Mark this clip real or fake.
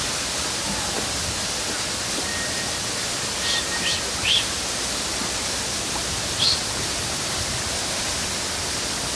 real